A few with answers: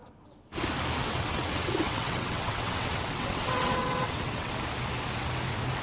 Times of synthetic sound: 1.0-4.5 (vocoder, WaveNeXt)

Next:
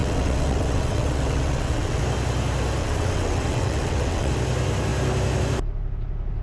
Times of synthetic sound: 0.0-2.0 (vocoder, WaveNeXt); 2.8-4.3

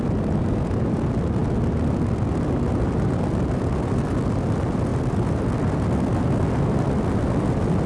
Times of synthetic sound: none

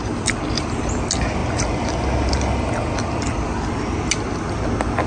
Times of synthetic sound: none

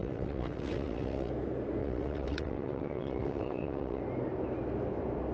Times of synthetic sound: 0.0-1.3 (vocoder, WaveNeXt); 1.8-4.0

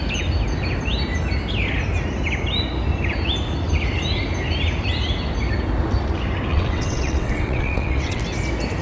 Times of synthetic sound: 6.5-8.2 (vocoder, WaveNeXt)

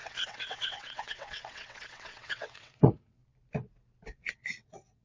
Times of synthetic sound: 0.0-3.2 (vocoder, WaveNeXt); 4.3-5.0